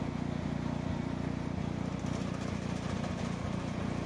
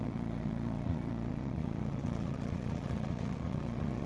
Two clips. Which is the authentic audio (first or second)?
first